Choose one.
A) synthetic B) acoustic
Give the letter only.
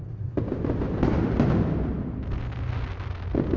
B